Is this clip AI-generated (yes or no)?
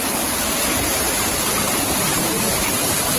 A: no